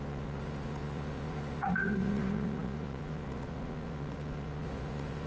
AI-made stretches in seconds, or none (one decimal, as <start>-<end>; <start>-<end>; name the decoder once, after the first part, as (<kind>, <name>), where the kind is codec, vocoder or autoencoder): 0.0-5.3 (vocoder, Vocos)